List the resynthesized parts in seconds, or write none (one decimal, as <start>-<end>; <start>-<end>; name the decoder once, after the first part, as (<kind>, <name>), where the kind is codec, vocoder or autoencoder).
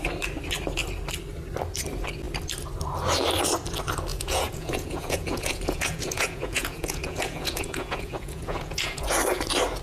4.1-9.1 (vocoder, Vocos)